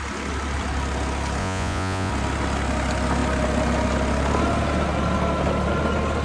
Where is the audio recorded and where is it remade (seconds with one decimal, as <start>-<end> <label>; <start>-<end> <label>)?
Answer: 0.0-1.4 recorded; 1.4-2.1 remade; 2.1-6.2 recorded